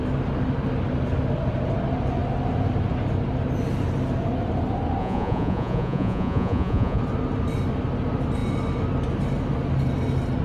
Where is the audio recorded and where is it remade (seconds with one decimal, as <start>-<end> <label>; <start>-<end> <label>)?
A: 0.0-5.0 recorded; 5.0-7.0 remade; 7.0-10.4 recorded